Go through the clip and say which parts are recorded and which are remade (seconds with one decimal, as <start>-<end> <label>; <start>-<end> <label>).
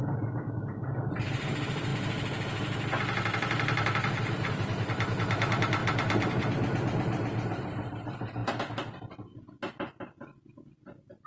0.0-11.3 recorded